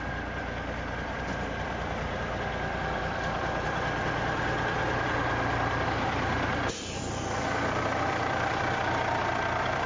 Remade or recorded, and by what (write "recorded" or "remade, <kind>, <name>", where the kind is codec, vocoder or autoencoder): remade, vocoder, BigVGAN v2